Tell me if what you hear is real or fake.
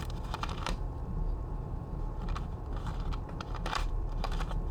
fake